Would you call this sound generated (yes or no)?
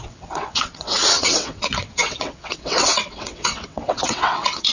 yes